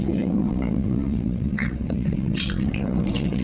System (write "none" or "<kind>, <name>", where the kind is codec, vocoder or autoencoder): vocoder, WaveNeXt